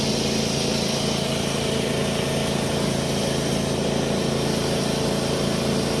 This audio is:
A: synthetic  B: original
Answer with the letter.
B